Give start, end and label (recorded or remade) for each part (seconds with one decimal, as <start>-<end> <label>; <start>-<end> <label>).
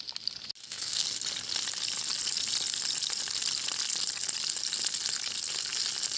0.0-0.6 recorded; 0.6-1.1 remade; 1.1-6.2 recorded